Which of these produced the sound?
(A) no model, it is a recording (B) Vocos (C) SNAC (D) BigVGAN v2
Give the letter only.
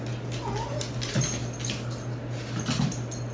A